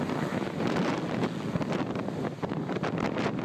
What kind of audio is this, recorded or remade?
recorded